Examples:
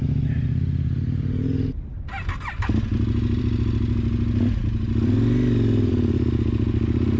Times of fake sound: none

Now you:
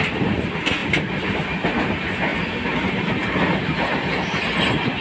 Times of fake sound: none

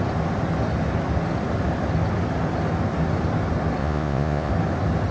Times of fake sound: 3.8-4.5

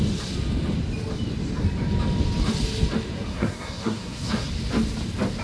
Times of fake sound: 3.3-4.5

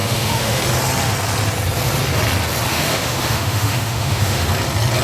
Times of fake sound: 0.0-0.6; 2.7-4.5